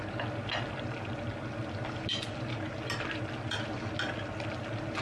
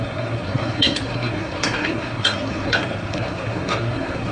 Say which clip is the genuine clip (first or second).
first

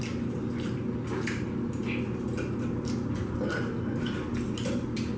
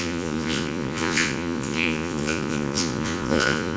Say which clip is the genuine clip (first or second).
first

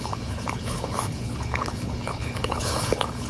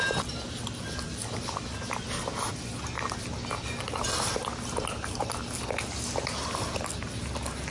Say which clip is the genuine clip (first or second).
second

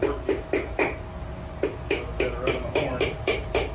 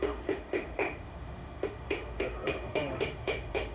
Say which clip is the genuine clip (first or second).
first